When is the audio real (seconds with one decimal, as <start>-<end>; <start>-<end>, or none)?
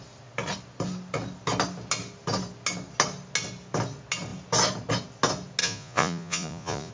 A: 0.0-5.6